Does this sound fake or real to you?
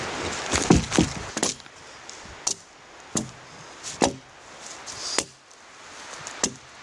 real